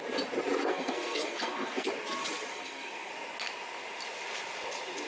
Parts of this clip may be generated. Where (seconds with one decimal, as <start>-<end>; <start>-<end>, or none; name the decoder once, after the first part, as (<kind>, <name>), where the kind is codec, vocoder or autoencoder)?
0.7-1.9 (codec, SNAC); 2.5-3.1